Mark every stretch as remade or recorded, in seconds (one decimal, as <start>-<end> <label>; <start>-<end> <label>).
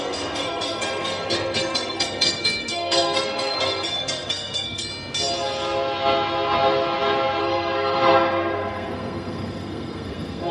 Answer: 0.0-4.9 remade; 4.9-7.4 recorded; 7.4-10.5 remade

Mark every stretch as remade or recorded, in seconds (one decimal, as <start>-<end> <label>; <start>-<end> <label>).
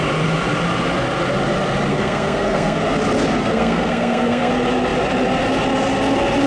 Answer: 0.0-1.9 recorded; 1.9-2.8 remade; 2.8-3.4 recorded; 3.4-4.5 remade; 4.5-6.5 recorded